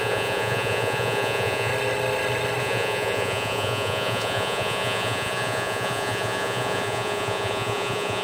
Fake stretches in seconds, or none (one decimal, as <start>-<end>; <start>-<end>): 0.0-1.7; 2.6-8.2